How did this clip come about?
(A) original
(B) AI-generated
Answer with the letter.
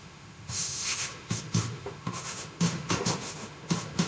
B